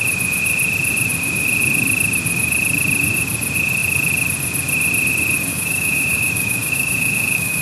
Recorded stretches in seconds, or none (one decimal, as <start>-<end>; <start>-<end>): 0.0-5.5